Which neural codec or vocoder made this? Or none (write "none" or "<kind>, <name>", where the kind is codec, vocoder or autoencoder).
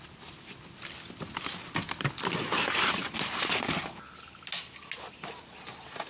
none